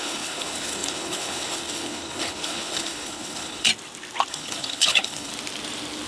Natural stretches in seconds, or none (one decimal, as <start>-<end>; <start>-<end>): 3.7-4.3; 5.3-6.1